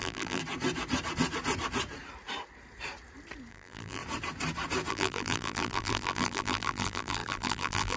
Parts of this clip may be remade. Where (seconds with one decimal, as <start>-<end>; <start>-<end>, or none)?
0.0-0.4; 3.5-4.0; 4.9-8.0